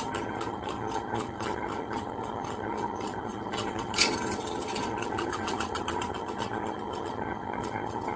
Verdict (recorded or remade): remade